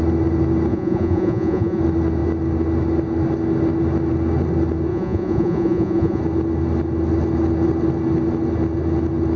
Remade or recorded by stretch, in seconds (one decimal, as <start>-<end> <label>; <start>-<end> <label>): 0.0-0.7 recorded; 0.7-1.8 remade; 1.8-4.9 recorded; 4.9-6.2 remade; 6.2-9.4 recorded